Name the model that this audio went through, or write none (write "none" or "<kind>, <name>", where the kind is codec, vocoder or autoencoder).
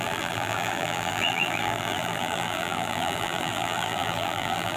vocoder, BigVGAN v2